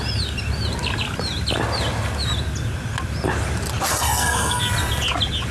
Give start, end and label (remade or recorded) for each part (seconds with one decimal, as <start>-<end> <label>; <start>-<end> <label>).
0.0-3.9 recorded; 3.9-4.6 remade; 4.6-5.5 recorded